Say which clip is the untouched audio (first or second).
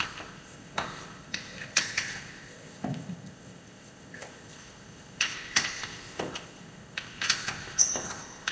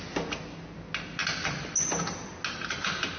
second